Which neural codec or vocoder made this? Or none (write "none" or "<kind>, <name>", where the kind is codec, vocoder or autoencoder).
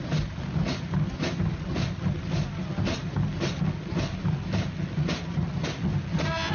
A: none